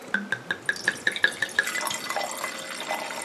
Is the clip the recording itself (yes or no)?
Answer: yes